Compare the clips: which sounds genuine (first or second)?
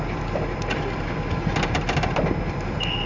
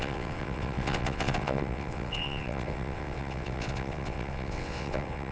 first